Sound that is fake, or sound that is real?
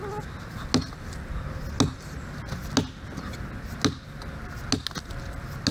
real